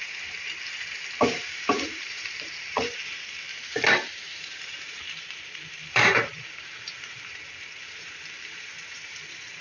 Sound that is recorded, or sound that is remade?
remade